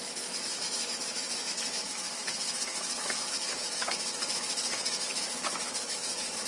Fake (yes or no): yes